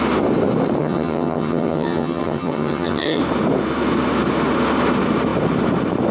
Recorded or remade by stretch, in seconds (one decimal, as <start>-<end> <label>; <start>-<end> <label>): 0.0-0.8 recorded; 0.8-3.2 remade; 3.2-6.1 recorded